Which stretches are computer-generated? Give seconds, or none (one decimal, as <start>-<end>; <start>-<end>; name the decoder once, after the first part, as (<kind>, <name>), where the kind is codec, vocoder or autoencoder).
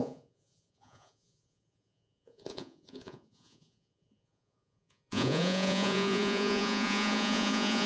0.0-7.9 (vocoder, Vocos)